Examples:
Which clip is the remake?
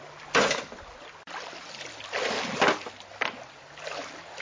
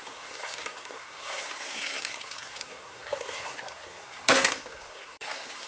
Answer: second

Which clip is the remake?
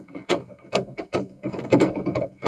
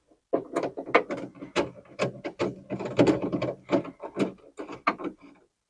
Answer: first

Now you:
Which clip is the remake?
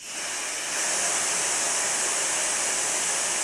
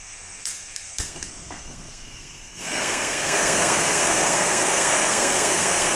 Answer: second